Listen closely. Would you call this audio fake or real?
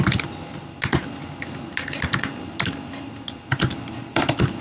real